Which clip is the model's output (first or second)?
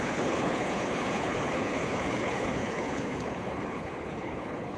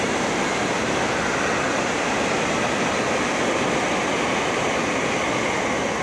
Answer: first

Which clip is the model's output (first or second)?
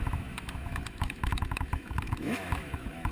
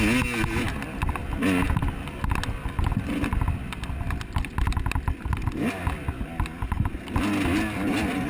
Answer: first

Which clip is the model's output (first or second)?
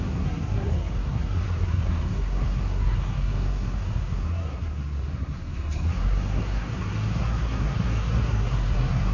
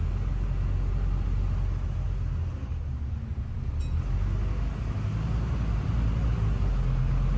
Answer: first